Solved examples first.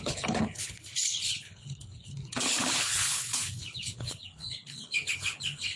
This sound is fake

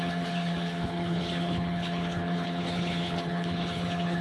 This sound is fake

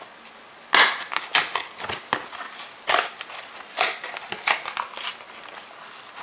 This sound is real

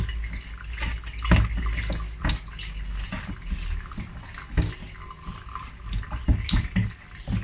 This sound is real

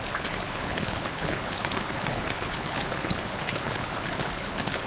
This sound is fake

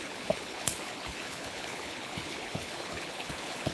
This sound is fake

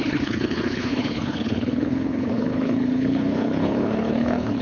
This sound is fake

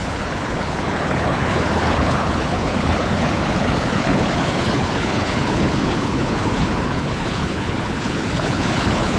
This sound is fake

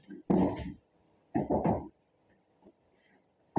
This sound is real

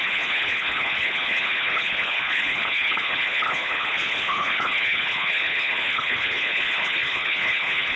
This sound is fake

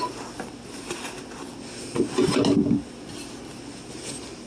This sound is real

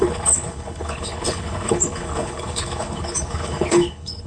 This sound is fake